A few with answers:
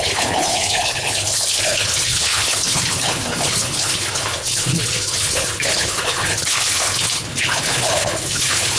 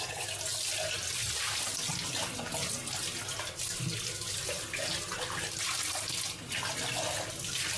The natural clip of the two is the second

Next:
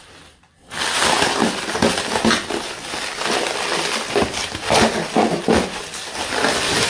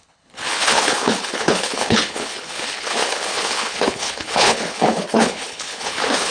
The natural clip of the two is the first